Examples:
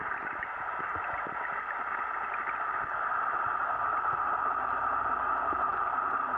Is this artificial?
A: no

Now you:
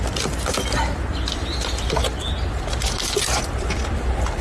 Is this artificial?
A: no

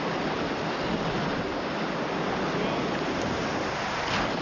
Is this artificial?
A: no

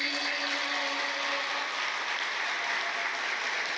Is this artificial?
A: no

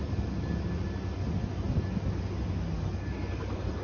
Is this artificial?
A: no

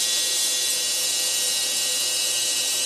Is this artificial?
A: yes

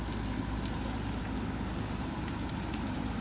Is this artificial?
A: no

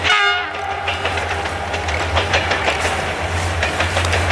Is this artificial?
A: no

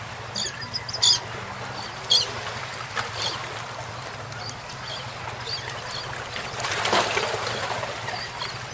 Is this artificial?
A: no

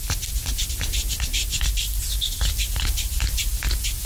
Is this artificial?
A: no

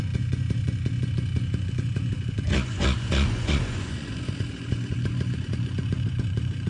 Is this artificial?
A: yes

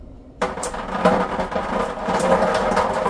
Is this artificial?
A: yes